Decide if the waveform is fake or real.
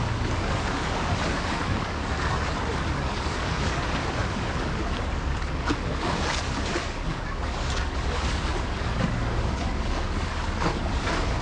fake